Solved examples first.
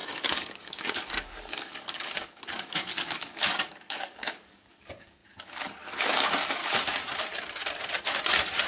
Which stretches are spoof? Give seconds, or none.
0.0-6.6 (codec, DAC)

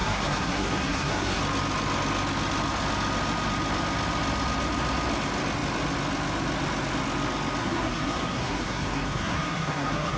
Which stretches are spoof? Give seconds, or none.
0.0-1.4 (codec, SNAC); 7.6-10.2

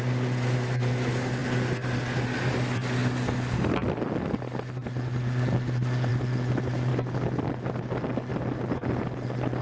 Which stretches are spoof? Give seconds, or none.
none

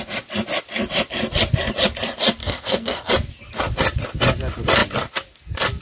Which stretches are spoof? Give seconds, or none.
2.4-3.1 (codec, SNAC)

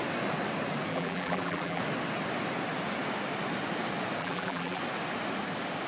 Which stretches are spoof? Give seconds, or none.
0.9-1.8 (vocoder, BigVGAN v2); 4.2-4.8

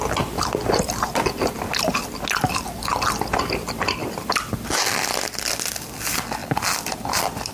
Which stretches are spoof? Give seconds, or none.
4.0-4.5 (vocoder, BigVGAN v2); 6.4-7.5

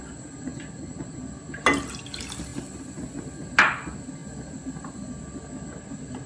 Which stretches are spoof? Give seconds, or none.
none

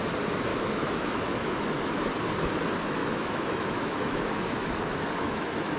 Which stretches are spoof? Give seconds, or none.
0.5-2.0 (autoencoder, DAC-VAE); 3.0-5.8